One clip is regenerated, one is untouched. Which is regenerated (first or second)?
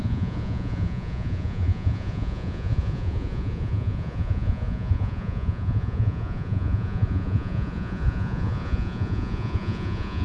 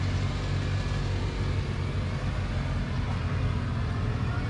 first